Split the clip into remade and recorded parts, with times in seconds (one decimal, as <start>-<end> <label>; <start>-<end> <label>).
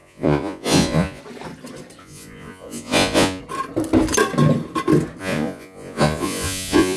0.0-1.2 remade; 1.2-2.0 recorded; 2.0-3.4 remade; 3.4-5.2 recorded; 5.2-7.0 remade